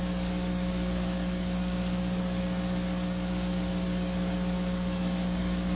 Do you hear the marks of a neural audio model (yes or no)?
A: yes